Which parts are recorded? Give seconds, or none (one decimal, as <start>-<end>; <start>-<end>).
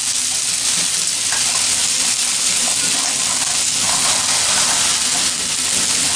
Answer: 0.0-6.2